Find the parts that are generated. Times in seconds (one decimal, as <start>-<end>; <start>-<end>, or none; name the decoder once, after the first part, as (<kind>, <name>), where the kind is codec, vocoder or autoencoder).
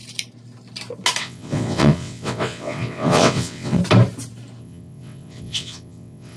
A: 1.2-3.8 (vocoder, WaveNeXt); 4.6-6.4